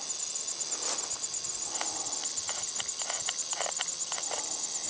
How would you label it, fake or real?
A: real